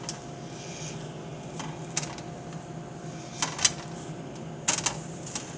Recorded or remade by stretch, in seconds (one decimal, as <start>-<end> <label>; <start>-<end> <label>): 0.0-5.6 recorded